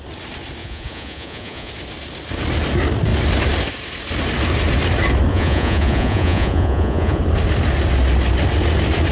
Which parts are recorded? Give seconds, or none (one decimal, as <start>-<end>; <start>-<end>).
0.0-0.6; 1.7-5.3; 7.2-9.1